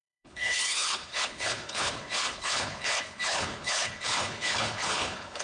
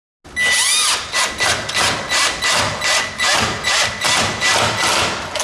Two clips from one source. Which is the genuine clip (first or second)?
second